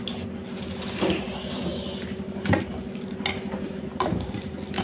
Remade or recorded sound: recorded